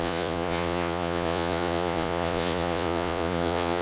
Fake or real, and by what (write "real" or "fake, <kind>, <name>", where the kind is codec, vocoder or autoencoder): fake, vocoder, Vocos